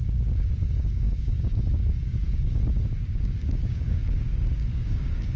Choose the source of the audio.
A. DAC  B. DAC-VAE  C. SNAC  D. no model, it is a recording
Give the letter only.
A